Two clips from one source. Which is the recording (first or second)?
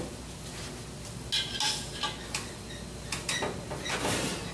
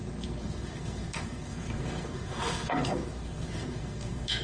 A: first